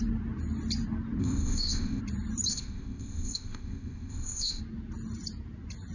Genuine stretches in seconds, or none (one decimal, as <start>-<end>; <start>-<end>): 0.0-1.2; 2.0-2.5; 4.6-5.9

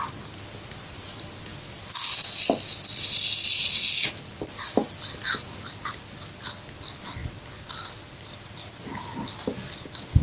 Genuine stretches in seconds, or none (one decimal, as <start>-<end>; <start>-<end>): 0.0-10.2

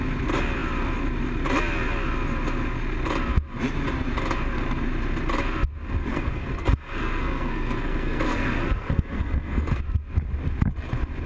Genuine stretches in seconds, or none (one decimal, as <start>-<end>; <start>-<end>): 0.0-6.1; 9.8-11.3

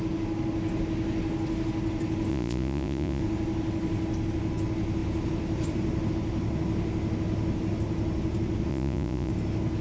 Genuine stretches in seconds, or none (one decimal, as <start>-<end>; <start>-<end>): 0.0-2.3; 3.2-8.7; 9.3-9.8

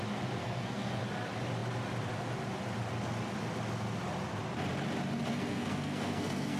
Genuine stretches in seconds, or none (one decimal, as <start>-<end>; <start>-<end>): 0.0-0.4; 1.0-5.3

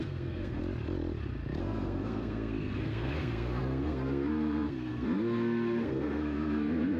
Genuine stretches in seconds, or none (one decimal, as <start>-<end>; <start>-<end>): 0.6-1.6

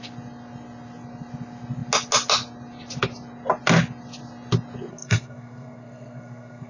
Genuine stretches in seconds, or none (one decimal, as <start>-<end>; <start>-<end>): 0.0-4.9

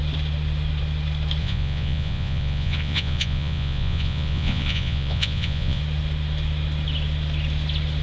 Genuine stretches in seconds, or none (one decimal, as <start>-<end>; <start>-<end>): 0.0-1.4; 5.8-8.0